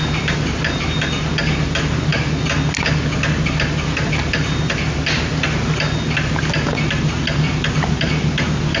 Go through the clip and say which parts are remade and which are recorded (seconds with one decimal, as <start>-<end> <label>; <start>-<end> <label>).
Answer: 0.0-8.8 recorded